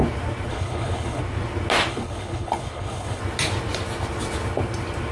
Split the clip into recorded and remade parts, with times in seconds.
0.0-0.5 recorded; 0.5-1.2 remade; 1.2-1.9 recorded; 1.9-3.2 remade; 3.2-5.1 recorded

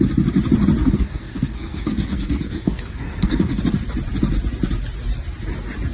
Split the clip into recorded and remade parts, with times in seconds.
0.0-0.8 recorded; 0.8-3.6 remade; 3.6-5.9 recorded

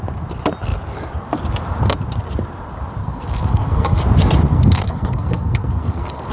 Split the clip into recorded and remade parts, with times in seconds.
0.0-3.0 recorded; 3.0-4.0 remade; 4.0-4.5 recorded; 4.5-6.3 remade

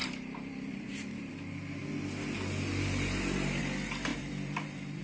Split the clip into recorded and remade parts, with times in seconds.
0.0-1.3 remade; 1.3-4.1 recorded; 4.1-5.0 remade

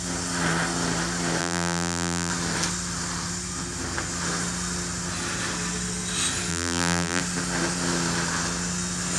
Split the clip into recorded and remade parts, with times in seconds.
0.0-1.4 recorded; 1.4-2.3 remade; 2.3-6.5 recorded; 6.5-7.2 remade; 7.2-9.2 recorded